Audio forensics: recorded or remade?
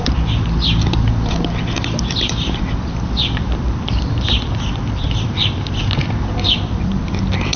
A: remade